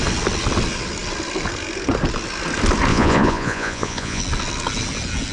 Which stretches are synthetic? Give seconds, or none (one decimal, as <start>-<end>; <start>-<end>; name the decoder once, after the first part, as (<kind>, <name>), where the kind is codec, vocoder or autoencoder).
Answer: 2.9-4.2 (vocoder, Vocos)